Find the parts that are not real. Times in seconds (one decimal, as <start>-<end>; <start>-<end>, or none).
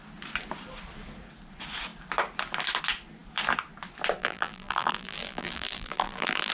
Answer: 4.2-6.5